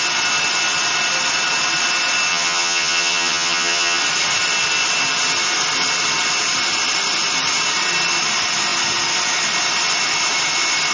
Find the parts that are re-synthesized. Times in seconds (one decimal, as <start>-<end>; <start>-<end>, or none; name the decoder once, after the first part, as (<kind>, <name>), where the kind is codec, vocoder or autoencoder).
2.3-4.0 (vocoder, HiFi-GAN)